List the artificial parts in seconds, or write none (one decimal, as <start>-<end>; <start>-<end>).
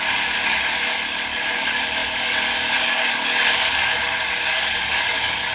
0.0-5.5